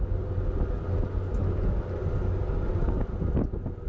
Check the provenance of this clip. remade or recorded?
recorded